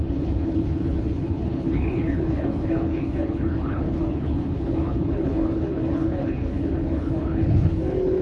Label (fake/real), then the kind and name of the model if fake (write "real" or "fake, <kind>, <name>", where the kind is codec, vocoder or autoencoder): fake, codec, HILCodec